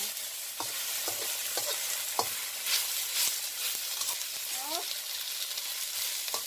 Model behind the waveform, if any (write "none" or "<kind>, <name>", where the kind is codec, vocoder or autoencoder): none